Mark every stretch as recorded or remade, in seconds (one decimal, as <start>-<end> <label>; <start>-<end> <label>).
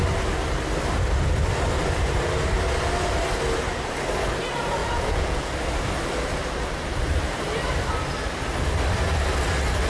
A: 0.0-4.8 recorded; 4.8-5.5 remade; 5.5-9.9 recorded